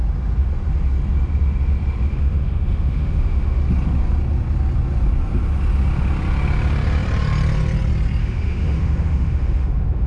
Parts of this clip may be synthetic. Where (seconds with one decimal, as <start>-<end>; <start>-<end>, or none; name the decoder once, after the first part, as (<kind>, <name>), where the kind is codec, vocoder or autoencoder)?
2.1-3.6 (autoencoder, DAC-VAE); 8.2-10.1